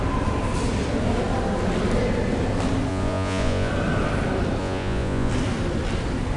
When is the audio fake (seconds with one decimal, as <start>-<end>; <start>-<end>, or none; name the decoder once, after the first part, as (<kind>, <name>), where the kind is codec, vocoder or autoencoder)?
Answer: 2.9-3.7 (vocoder, Vocos); 4.6-5.3